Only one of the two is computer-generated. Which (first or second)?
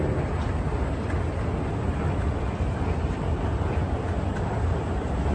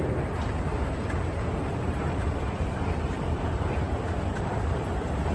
second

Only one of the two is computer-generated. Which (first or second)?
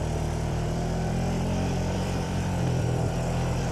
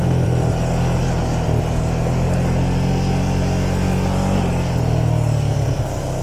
first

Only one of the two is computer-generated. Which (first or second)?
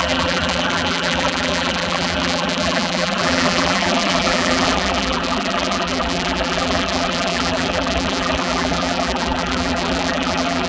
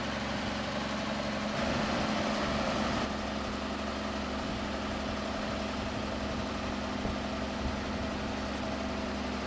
first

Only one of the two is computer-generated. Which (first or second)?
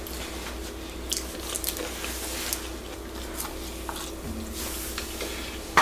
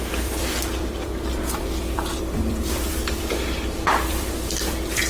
second